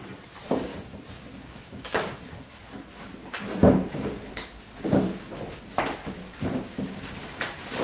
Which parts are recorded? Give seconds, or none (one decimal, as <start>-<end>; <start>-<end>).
0.0-0.7; 2.3-3.6; 5.4-6.2; 7.1-7.8